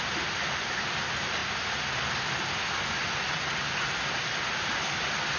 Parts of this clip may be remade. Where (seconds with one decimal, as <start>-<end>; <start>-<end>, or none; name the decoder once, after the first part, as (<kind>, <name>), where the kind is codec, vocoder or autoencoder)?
none